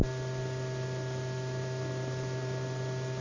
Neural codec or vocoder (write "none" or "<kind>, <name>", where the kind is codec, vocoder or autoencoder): none